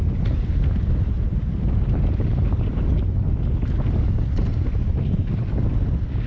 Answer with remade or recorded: recorded